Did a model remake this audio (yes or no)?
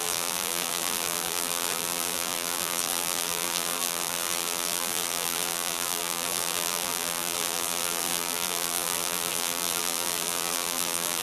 yes